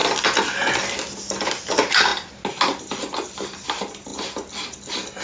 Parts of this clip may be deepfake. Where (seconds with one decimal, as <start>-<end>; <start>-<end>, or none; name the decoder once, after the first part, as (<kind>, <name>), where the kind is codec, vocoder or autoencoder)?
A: none